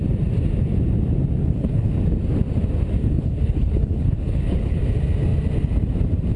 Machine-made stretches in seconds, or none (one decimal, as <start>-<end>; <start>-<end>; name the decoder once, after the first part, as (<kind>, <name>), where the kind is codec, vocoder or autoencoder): 1.4-1.9 (codec, HILCodec); 3.0-4.8